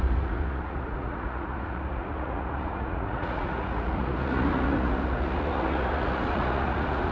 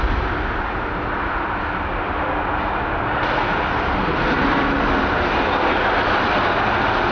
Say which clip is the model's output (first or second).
first